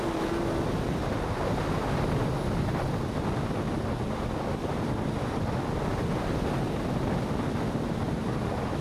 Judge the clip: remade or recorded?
recorded